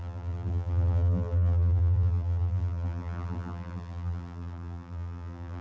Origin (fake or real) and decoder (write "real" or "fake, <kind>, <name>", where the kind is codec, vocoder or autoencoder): fake, vocoder, BigVGAN v2